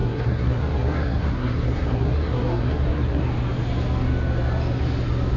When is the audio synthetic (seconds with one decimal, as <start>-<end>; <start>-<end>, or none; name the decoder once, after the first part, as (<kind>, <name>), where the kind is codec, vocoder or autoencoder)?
0.0-3.2 (codec, SNAC)